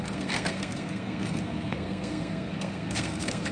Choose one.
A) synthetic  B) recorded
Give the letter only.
A